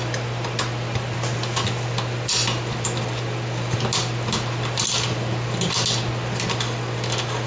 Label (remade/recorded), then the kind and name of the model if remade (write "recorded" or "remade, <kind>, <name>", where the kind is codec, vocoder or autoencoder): recorded